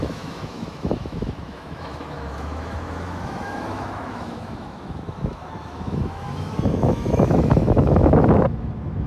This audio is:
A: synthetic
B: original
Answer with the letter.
A